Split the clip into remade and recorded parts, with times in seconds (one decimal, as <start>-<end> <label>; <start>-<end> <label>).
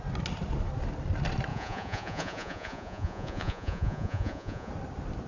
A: 0.0-1.5 recorded; 1.5-4.7 remade; 4.7-5.3 recorded